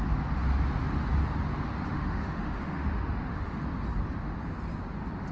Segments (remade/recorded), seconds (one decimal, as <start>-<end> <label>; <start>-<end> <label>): 0.0-1.9 recorded; 1.9-3.6 remade; 3.6-5.3 recorded